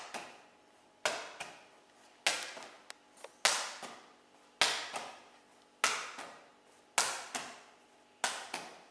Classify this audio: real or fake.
real